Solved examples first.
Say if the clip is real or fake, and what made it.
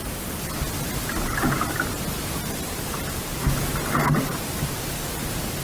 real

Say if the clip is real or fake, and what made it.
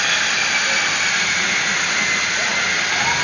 real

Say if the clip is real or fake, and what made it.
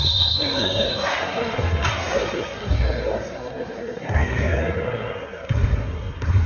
fake, codec, SNAC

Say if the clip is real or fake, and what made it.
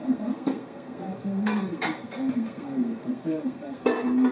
fake, codec, SNAC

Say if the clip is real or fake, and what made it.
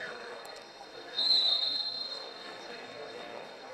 fake, codec, SNAC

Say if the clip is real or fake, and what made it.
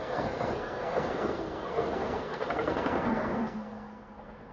fake, codec, SNAC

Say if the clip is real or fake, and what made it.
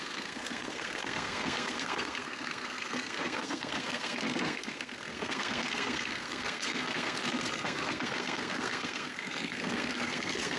fake, codec, SNAC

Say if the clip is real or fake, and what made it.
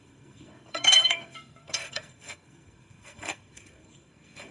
fake, codec, SNAC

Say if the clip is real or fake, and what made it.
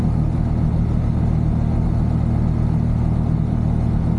real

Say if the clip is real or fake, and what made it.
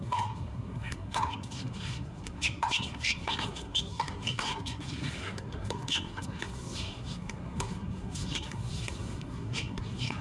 fake, codec, SNAC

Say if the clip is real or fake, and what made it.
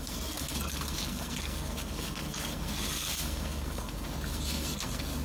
fake, codec, SNAC